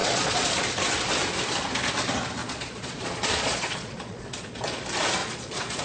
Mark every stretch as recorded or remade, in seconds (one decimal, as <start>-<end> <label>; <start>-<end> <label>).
0.0-0.6 remade; 0.6-2.4 recorded; 2.4-4.8 remade; 4.8-5.2 recorded; 5.2-5.8 remade